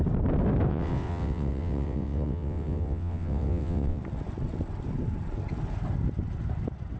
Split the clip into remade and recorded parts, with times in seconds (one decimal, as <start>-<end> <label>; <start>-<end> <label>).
0.0-0.7 recorded; 0.7-4.0 remade; 4.0-7.0 recorded